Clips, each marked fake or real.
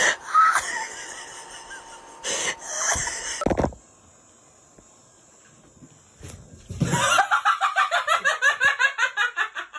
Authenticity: real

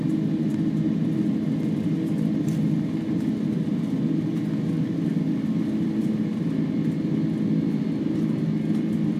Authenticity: real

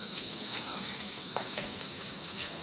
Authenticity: fake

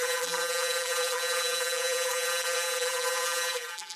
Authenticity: fake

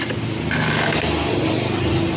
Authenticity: real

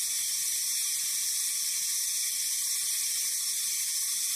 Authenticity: real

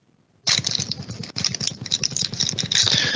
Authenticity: real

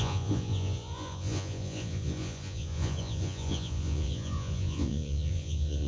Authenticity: fake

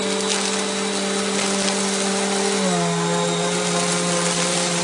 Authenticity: real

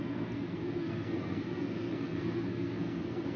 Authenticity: fake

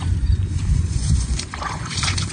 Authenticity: fake